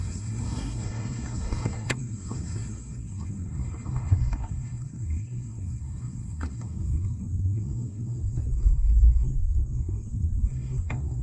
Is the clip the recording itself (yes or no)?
no